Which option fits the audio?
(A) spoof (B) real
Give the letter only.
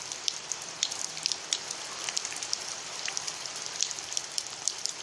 A